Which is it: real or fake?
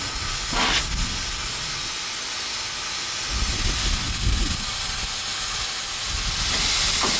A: real